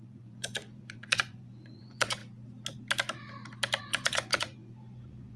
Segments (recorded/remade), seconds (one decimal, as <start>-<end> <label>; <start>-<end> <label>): 0.0-2.2 remade; 2.2-3.8 recorded; 3.8-5.4 remade